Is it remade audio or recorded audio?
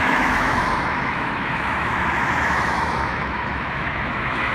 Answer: remade